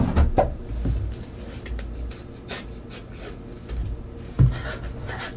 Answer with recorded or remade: recorded